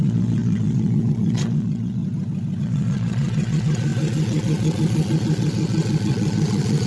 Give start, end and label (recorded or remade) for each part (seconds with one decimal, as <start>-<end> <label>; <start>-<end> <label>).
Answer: 0.0-2.0 remade; 2.0-2.6 recorded; 2.6-6.9 remade